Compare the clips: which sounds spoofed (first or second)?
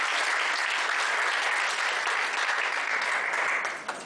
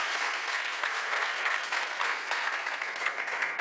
second